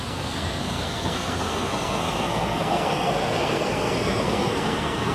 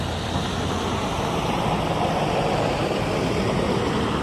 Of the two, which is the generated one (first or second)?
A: first